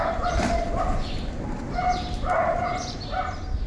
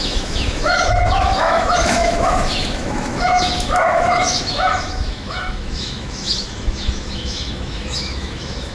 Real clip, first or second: first